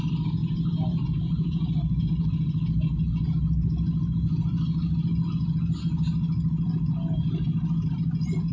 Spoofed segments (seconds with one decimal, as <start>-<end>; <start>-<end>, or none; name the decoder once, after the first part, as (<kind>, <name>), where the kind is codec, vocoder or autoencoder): 0.4-2.0 (vocoder, BigVGAN v2)